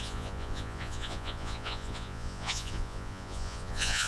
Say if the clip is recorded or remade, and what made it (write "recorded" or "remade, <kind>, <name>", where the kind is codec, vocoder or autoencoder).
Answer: remade, vocoder, Vocos